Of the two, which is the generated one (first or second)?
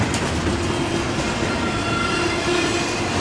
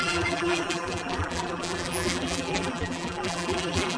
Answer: second